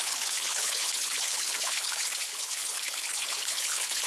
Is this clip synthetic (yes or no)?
yes